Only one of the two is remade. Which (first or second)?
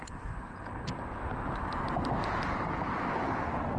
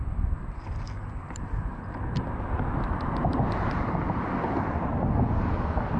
second